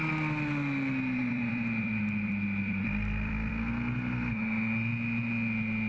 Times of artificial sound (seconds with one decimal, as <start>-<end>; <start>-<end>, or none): 1.2-3.5